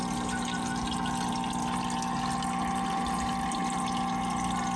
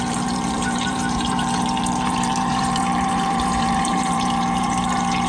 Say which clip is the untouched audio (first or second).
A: first